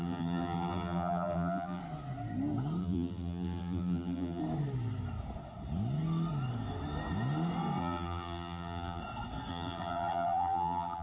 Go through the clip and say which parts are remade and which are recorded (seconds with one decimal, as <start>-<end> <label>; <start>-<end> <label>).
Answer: 0.0-1.8 remade; 1.8-2.8 recorded; 2.8-4.4 remade; 4.4-7.8 recorded; 7.8-9.0 remade; 9.0-9.5 recorded; 9.5-11.0 remade